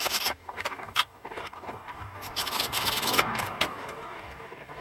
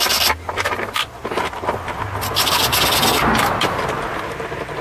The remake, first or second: first